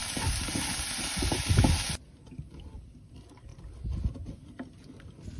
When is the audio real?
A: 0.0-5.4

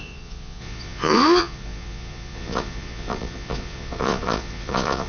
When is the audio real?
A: none

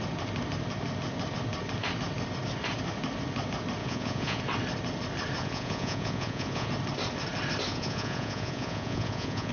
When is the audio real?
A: 0.0-3.8; 4.4-5.4; 6.7-7.7

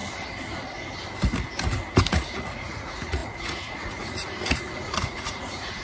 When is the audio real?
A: 0.0-2.1